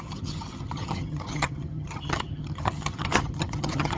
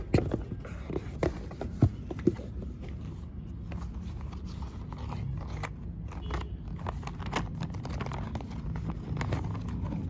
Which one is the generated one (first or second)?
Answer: first